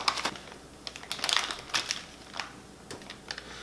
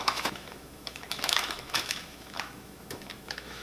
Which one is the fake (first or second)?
second